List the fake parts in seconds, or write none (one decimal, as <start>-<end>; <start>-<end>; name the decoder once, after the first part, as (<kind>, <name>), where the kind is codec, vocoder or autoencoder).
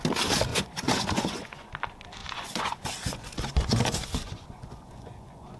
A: 0.5-1.7 (vocoder, Vocos); 2.2-5.6